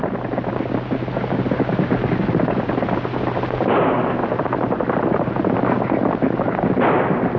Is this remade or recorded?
recorded